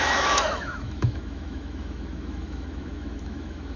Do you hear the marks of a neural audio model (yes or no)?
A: yes